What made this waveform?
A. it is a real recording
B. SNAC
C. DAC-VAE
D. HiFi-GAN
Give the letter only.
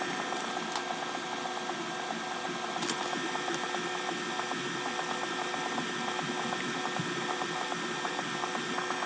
A